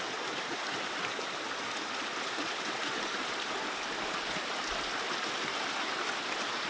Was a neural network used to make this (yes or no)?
no